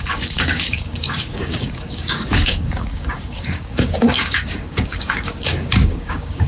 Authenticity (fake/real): fake